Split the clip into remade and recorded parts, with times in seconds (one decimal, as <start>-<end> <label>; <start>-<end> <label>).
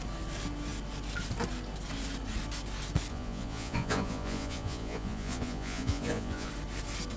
0.0-3.1 recorded; 3.1-6.5 remade; 6.5-7.2 recorded